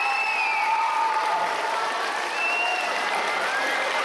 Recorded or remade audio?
recorded